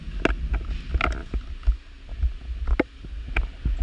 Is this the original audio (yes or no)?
yes